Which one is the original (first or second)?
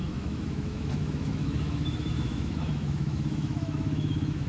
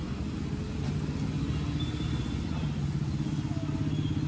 second